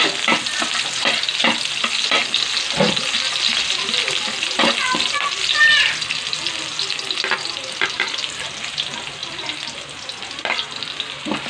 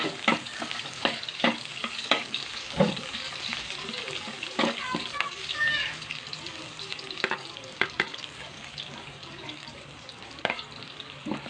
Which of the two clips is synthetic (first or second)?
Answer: second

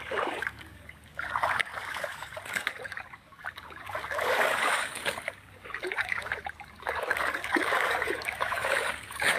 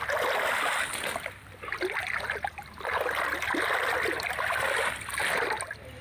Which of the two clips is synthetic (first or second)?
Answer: first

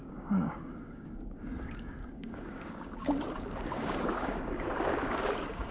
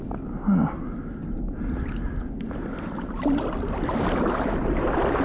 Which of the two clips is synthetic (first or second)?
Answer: first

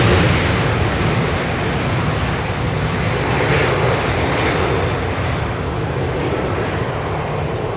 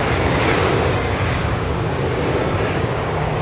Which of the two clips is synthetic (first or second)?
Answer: second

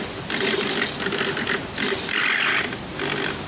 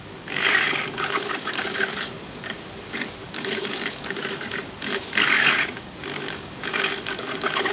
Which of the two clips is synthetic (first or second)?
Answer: second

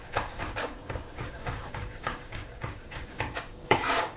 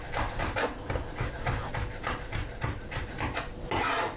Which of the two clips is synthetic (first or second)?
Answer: first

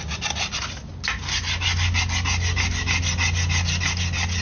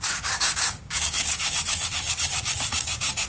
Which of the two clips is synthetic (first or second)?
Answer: second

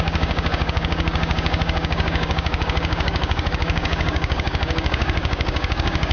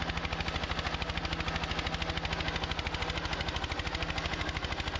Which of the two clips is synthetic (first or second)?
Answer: first